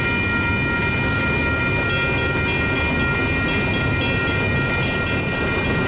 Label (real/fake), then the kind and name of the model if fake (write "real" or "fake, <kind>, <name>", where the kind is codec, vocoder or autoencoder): real